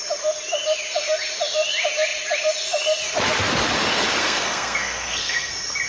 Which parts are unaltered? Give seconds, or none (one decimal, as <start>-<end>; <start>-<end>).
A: 0.0-4.2; 5.5-5.9